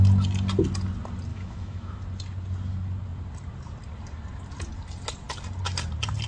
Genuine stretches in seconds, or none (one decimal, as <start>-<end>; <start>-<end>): 0.0-1.3; 2.0-6.3